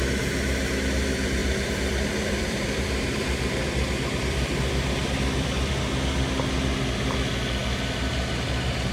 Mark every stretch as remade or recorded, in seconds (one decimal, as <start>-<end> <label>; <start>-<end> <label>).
0.0-1.4 recorded; 1.4-5.7 remade; 5.7-8.9 recorded